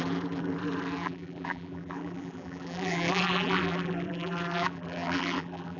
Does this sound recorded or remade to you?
remade